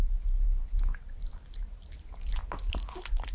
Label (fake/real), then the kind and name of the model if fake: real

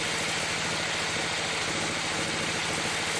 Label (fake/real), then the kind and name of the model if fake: real